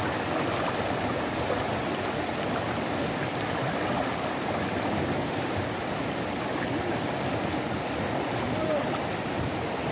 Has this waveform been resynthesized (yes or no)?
no